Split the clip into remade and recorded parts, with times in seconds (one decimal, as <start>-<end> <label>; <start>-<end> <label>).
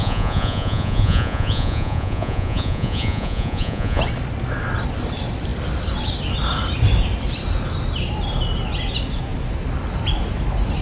0.0-4.0 remade; 4.0-10.8 recorded